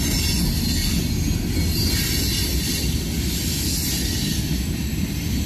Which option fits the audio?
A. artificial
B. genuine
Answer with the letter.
B